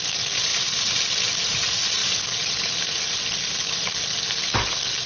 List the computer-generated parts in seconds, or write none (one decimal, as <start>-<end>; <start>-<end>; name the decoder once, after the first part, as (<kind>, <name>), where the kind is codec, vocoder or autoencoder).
none